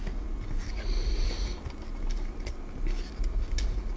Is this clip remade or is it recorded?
recorded